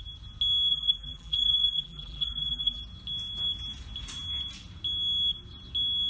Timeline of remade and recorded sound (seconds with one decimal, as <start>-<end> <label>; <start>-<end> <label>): 0.0-0.7 recorded; 0.7-2.8 remade; 2.8-6.1 recorded